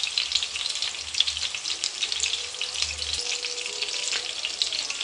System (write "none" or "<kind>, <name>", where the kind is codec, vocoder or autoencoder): none